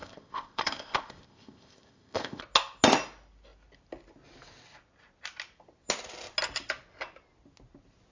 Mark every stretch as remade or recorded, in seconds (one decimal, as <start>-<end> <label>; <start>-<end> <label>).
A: 0.0-2.4 remade; 2.4-8.1 recorded